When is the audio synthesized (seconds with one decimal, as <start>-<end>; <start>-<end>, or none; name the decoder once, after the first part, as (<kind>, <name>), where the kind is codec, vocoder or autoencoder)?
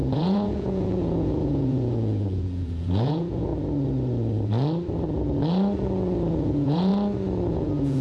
0.0-3.5 (vocoder, Vocos); 6.3-6.9; 7.5-8.0